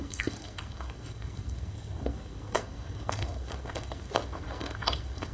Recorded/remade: remade